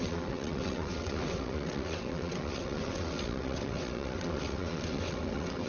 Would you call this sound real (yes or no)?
no